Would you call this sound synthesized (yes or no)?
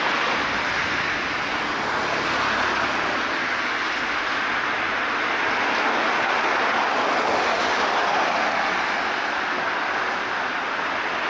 no